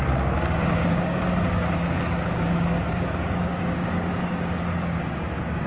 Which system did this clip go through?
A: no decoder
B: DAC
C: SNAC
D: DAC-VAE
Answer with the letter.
B